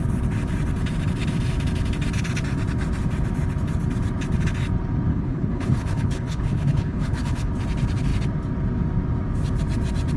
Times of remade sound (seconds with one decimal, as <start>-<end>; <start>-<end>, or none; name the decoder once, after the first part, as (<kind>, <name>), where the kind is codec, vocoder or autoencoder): 5.1-7.5 (codec, HILCodec)